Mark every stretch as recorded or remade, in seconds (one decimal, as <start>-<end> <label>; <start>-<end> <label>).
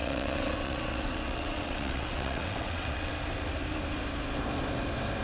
0.0-3.1 remade; 3.1-5.2 recorded